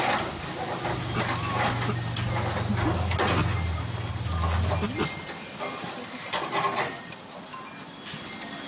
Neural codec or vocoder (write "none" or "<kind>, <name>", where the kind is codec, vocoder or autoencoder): none